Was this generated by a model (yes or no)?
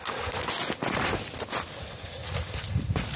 no